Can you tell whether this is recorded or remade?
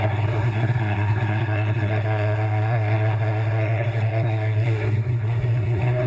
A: remade